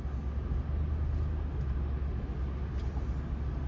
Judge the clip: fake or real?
real